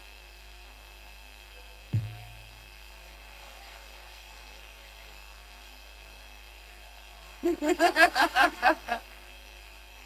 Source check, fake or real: fake